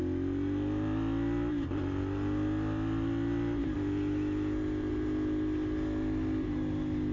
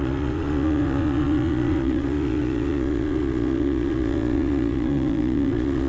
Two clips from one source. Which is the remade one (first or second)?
second